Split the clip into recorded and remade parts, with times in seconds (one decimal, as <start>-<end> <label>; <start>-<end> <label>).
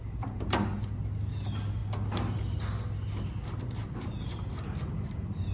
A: 0.0-5.5 recorded